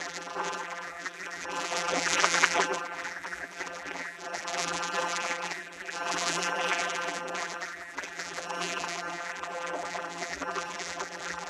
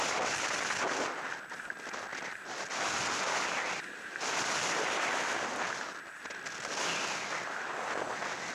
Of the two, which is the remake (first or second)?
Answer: first